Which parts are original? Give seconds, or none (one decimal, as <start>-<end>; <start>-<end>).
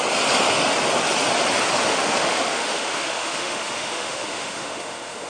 0.0-1.9